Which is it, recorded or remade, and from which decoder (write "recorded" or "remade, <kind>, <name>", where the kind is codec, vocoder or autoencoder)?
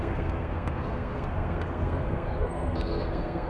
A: remade, codec, SNAC